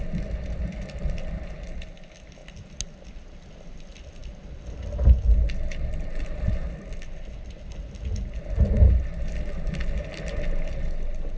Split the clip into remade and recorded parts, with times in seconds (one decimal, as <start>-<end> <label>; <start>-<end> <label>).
0.0-11.4 recorded